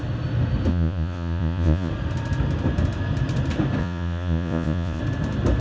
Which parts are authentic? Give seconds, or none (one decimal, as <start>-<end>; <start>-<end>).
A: 0.0-0.7; 1.9-3.8; 5.0-5.6

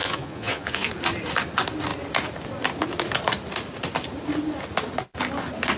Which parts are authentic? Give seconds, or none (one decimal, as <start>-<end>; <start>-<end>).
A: 0.9-5.8

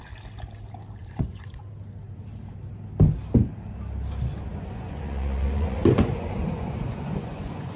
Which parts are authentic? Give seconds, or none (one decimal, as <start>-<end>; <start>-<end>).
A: 0.0-1.0; 1.6-4.5